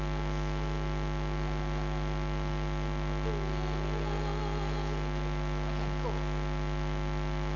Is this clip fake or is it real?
real